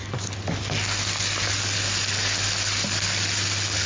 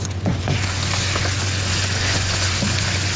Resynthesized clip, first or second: second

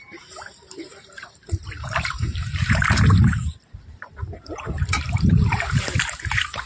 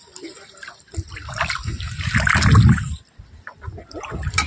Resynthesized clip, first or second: first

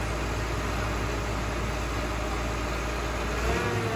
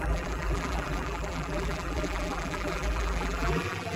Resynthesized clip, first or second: second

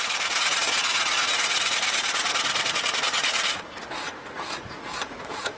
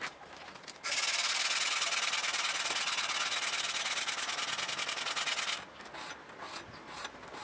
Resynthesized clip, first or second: first